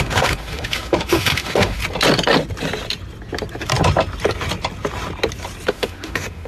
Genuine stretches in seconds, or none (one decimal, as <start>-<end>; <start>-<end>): 1.8-5.7